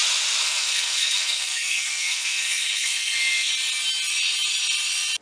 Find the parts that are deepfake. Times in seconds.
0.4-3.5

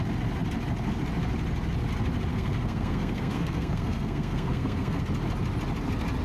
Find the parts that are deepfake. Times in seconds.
2.3-5.0

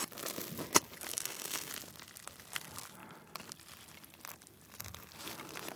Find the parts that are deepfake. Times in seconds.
1.1-1.7